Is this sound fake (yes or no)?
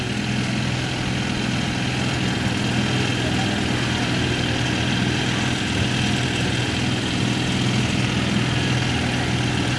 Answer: no